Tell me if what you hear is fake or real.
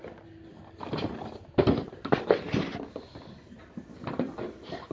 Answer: real